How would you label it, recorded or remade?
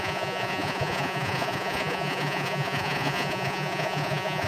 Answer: remade